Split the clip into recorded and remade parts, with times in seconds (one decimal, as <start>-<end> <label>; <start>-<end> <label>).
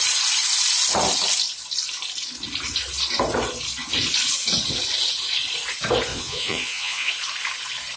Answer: 0.0-6.1 recorded; 6.1-7.1 remade; 7.1-8.0 recorded